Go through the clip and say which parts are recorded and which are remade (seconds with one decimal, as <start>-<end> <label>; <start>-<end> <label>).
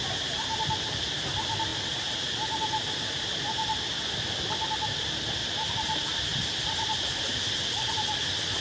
0.0-8.6 recorded